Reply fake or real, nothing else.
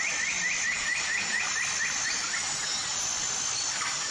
real